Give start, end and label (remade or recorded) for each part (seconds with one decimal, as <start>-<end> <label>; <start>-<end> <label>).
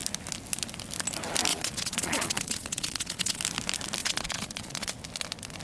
0.0-1.5 recorded; 1.5-3.4 remade; 3.4-4.0 recorded; 4.0-4.9 remade; 4.9-5.6 recorded